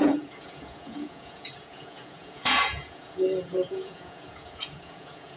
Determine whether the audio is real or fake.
fake